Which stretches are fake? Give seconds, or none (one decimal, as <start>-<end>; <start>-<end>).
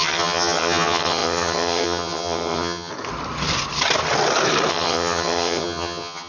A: 0.0-2.9; 4.7-6.3